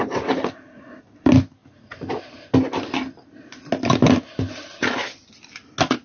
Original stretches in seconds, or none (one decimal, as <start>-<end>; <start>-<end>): 0.0-6.0